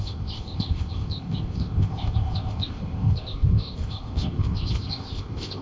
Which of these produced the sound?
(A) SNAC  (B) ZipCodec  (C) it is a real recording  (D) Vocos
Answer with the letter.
B